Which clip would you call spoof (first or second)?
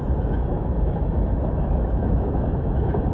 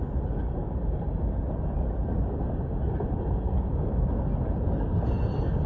first